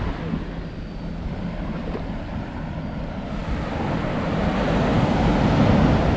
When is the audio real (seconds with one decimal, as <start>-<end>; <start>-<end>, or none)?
0.0-6.2